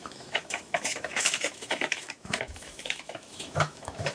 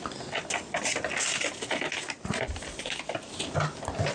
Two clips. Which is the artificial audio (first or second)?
first